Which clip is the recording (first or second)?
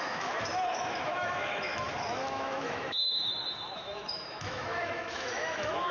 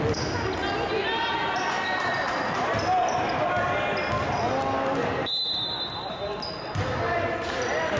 second